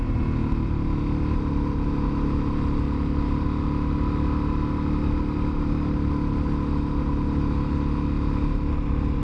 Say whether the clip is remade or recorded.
recorded